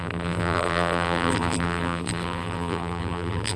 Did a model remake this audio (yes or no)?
yes